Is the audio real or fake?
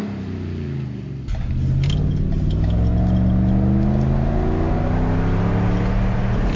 real